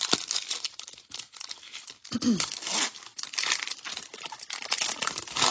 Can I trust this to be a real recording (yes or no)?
yes